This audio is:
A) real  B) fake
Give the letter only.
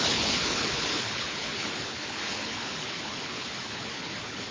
B